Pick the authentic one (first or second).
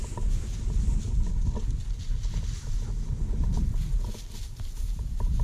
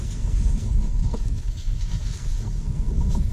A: first